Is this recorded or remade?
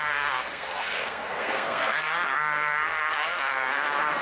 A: remade